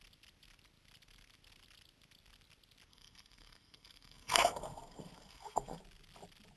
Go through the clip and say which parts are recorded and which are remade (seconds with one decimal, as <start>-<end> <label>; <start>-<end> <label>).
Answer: 0.0-2.9 recorded; 2.9-5.8 remade; 5.8-6.6 recorded